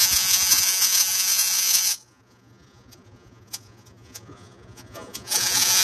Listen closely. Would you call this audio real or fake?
fake